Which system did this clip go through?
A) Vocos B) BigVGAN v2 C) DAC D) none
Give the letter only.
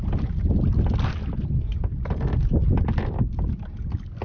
D